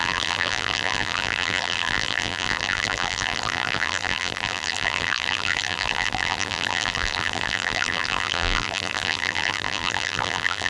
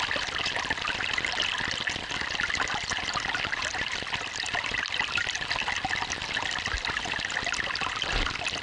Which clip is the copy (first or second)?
first